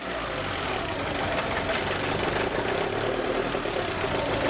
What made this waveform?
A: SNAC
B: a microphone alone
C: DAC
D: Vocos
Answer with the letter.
B